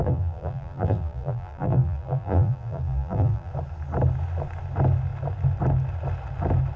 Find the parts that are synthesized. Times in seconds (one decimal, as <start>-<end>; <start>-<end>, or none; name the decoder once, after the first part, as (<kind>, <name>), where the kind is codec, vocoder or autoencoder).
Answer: 0.0-3.5 (vocoder, BigVGAN v2)